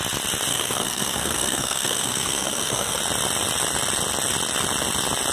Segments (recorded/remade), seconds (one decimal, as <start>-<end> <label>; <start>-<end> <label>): 0.0-0.5 recorded; 0.5-3.0 remade; 3.0-5.3 recorded